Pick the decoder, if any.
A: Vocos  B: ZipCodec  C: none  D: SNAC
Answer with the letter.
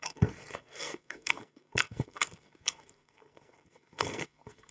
D